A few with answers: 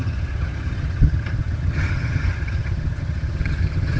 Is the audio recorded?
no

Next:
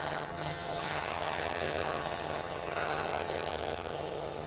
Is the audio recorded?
no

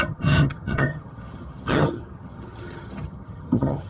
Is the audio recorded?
no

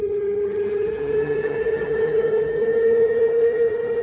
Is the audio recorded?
no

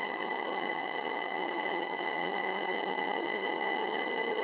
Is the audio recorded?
no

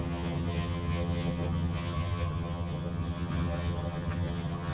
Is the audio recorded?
no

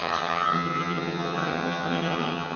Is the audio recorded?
no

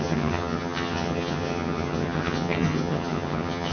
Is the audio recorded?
no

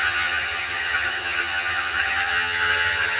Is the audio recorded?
no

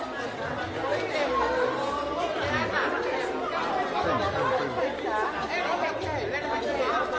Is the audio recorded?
yes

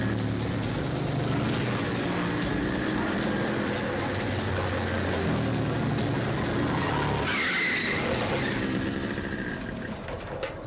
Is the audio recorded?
yes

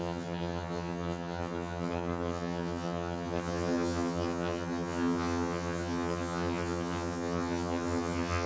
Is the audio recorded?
no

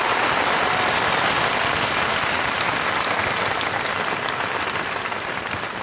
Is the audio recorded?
yes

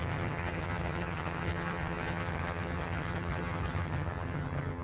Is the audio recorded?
no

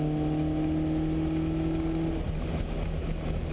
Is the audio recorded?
yes